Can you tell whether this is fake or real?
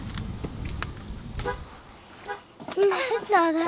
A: real